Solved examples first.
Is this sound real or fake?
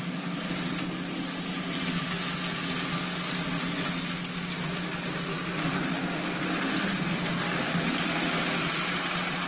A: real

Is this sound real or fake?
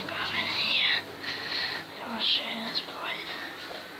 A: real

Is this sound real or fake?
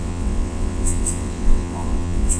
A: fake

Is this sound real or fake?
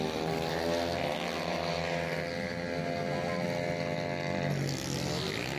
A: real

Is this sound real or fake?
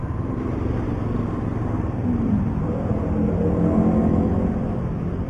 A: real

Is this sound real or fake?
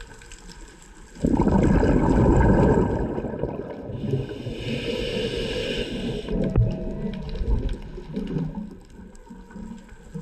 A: real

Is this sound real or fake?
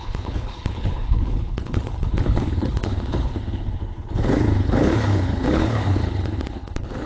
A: fake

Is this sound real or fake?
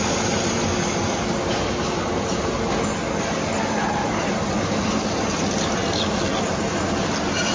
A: real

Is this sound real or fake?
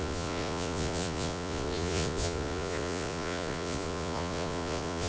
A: fake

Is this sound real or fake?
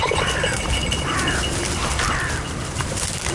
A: real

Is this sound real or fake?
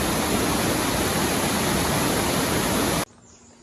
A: real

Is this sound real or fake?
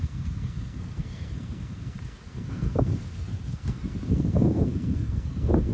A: fake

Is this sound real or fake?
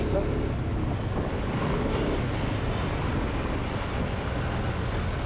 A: real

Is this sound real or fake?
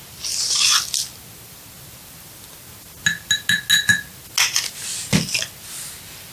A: real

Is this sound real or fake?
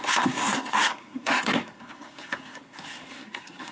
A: fake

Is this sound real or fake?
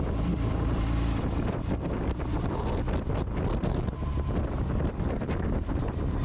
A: fake